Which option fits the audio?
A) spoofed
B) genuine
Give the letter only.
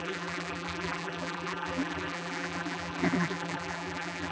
A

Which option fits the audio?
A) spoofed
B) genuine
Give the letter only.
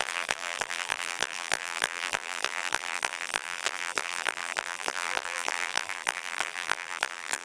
A